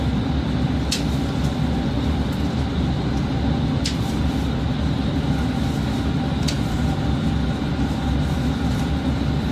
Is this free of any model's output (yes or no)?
yes